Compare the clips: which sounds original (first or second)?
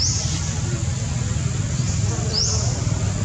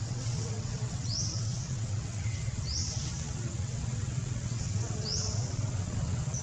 first